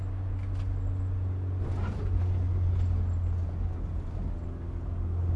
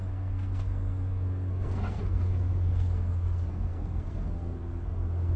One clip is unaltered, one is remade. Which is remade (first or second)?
second